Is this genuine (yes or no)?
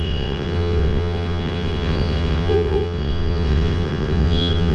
no